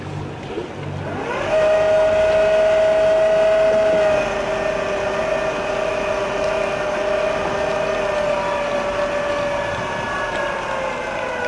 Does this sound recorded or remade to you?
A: recorded